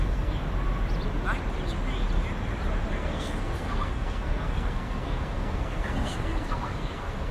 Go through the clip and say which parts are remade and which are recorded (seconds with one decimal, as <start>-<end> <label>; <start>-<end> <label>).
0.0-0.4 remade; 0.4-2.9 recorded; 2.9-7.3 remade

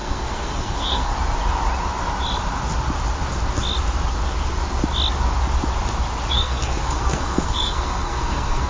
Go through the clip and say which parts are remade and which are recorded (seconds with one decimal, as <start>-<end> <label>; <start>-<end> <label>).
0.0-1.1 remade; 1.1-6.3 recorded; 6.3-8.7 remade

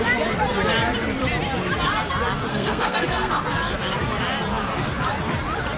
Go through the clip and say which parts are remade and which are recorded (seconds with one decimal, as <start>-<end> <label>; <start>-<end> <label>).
0.0-2.5 recorded; 2.5-3.3 remade; 3.3-5.8 recorded

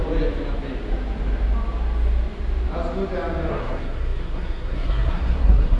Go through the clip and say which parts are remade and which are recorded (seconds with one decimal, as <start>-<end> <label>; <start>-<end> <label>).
0.0-3.5 recorded; 3.5-5.8 remade